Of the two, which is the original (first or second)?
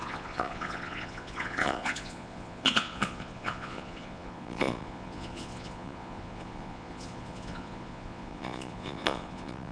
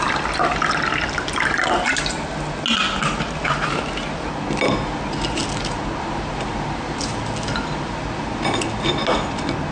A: second